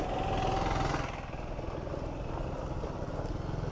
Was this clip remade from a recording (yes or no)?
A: no